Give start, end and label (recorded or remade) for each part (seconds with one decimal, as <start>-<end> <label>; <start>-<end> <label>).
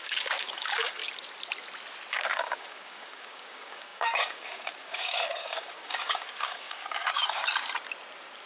0.0-1.0 remade; 1.0-2.1 recorded; 2.1-7.4 remade; 7.4-8.5 recorded